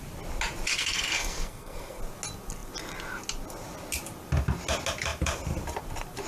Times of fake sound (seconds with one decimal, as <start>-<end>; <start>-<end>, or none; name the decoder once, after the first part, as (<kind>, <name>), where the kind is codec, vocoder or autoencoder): 0.7-2.0 (codec, SNAC)